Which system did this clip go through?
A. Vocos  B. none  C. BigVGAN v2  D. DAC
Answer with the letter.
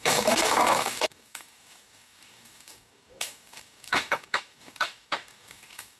D